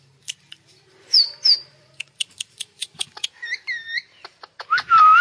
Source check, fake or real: fake